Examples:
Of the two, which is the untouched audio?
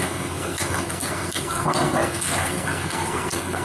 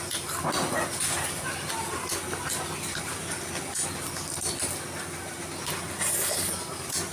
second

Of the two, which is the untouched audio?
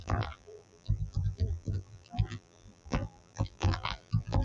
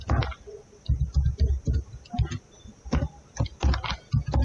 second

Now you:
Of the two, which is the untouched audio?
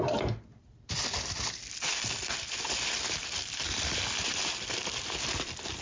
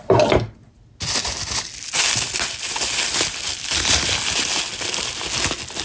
second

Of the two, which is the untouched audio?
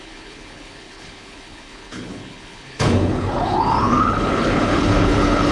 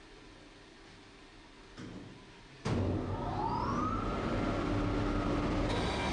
second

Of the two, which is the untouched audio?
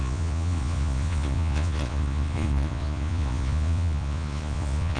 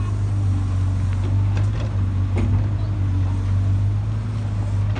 second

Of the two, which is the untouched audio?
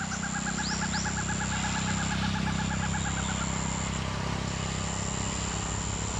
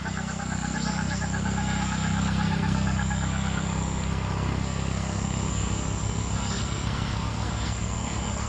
first